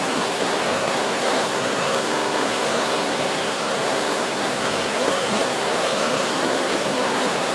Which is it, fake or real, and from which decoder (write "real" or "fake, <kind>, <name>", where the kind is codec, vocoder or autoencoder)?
fake, codec, SNAC